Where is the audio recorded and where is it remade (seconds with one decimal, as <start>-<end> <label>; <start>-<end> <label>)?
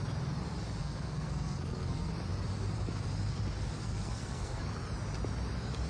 0.0-0.8 recorded; 0.8-2.1 remade; 2.1-3.8 recorded; 3.8-4.6 remade; 4.6-5.9 recorded